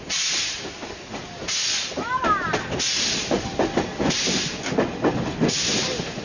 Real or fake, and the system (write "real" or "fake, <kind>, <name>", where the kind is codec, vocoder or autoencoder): real